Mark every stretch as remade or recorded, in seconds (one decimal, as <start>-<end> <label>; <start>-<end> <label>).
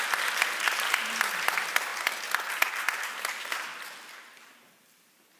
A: 0.0-5.4 recorded